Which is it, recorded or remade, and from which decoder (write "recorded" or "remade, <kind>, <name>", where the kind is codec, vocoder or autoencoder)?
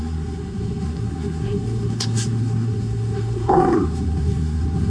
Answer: remade, codec, SNAC